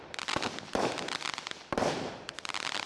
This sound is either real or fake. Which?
fake